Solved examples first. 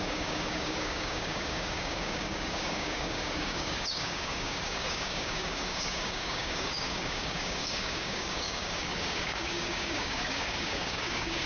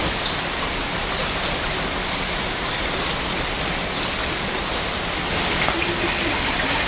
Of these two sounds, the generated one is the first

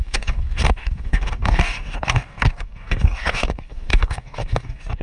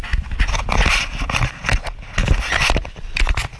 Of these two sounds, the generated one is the first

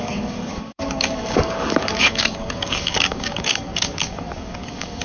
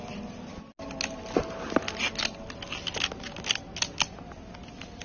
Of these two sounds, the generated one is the first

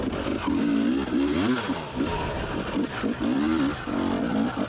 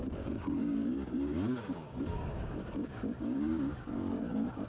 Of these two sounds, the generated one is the second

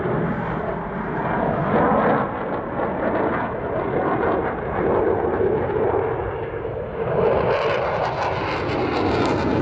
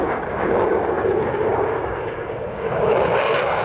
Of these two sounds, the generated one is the second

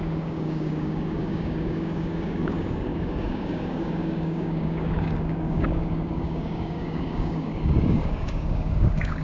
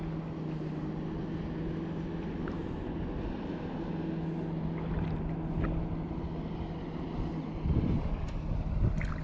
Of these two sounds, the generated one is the first